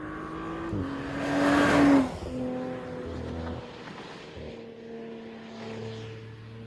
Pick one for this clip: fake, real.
real